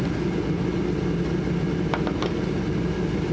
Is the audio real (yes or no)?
yes